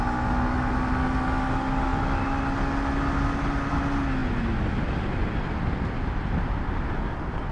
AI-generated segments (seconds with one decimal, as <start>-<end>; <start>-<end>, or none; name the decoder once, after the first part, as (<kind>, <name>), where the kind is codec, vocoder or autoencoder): none